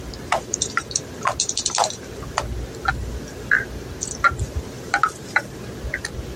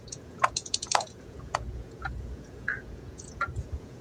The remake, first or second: second